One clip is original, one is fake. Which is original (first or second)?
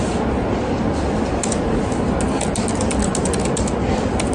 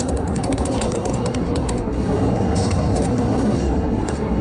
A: first